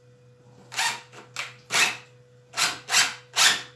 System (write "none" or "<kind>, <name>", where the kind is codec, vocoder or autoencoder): none